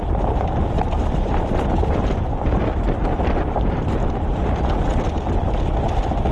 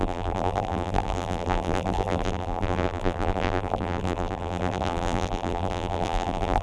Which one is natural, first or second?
first